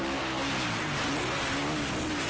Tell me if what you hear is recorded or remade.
recorded